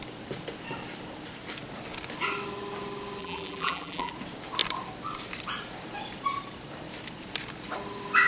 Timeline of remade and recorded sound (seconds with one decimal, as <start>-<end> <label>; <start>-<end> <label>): 0.0-3.2 recorded; 3.2-4.1 remade; 4.1-8.3 recorded